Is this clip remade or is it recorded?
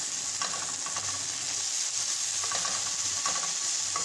recorded